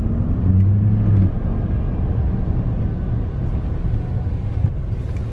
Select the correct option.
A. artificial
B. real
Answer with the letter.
B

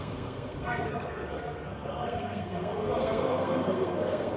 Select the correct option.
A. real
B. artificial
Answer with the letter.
B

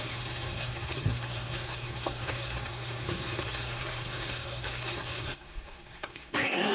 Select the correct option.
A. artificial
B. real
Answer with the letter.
A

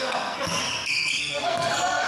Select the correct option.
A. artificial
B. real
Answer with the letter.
A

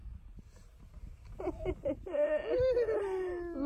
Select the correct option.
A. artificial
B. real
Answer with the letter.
B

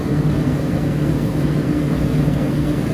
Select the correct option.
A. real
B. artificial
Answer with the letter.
B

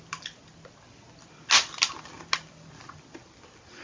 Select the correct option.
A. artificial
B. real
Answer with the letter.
B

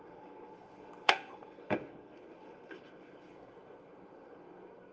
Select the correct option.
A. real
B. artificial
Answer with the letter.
B